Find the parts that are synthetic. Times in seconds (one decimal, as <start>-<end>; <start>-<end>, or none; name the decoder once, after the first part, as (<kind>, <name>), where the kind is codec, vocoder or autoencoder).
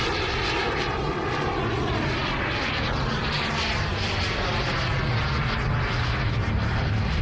none